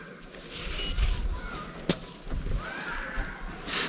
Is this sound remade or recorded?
recorded